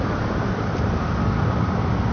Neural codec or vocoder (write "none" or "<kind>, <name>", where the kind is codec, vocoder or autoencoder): none